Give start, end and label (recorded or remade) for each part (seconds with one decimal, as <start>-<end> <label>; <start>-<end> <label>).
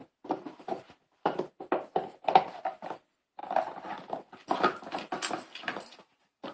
0.0-6.5 recorded